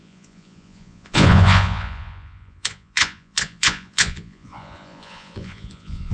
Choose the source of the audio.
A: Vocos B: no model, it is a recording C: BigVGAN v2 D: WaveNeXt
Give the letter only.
A